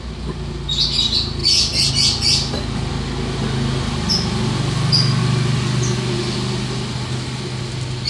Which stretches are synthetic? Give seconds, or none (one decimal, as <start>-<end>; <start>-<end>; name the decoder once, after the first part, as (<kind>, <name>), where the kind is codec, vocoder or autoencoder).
none